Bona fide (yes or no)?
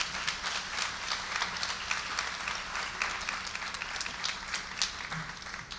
yes